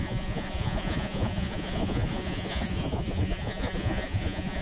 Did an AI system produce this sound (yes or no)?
yes